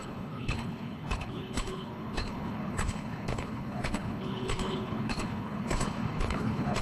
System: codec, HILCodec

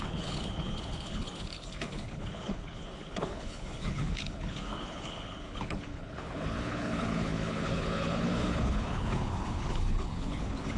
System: codec, HILCodec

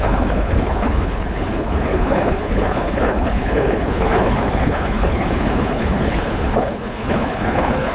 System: codec, HILCodec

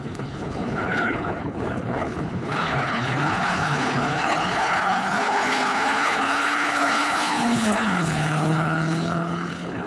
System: codec, HILCodec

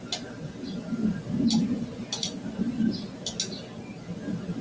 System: none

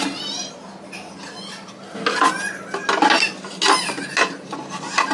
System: none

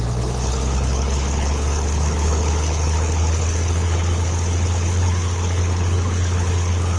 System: codec, HILCodec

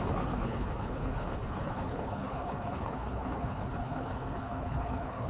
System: codec, HILCodec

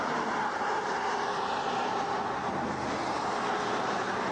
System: none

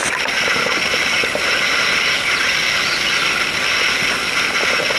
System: none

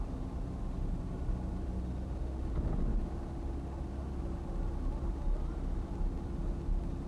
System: none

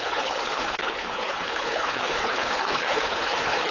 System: codec, HILCodec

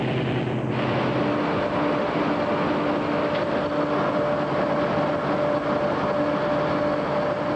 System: none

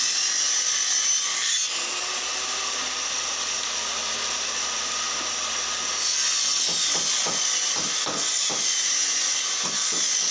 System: none